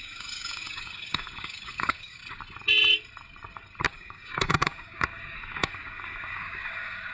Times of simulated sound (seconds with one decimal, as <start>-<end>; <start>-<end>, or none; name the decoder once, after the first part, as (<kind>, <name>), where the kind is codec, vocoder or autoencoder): 0.0-2.2 (codec, DAC); 3.9-7.1

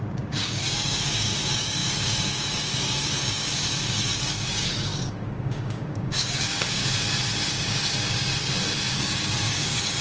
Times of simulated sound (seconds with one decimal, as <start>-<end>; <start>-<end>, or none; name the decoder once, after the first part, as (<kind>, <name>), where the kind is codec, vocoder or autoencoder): 0.0-6.8 (codec, DAC); 7.5-8.3; 8.9-10.0